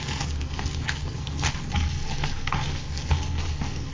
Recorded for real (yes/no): no